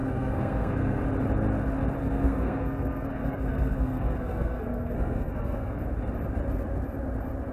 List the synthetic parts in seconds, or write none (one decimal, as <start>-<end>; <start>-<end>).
0.0-1.0; 2.0-5.8